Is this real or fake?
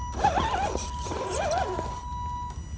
real